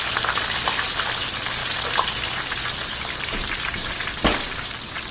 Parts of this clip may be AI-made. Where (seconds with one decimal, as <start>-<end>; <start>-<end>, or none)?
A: 1.6-3.7; 4.3-5.1

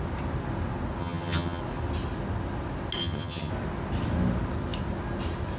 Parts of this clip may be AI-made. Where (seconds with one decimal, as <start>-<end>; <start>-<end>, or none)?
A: 1.0-1.6; 3.0-3.5

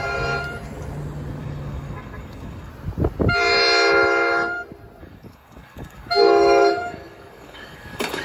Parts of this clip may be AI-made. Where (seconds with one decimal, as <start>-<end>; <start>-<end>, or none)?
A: 1.4-2.7; 5.0-8.2

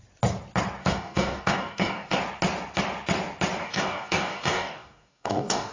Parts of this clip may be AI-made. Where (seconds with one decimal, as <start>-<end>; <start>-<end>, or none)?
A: 0.8-2.2; 3.6-5.7